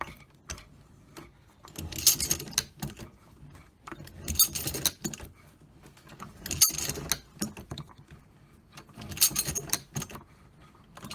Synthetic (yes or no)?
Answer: no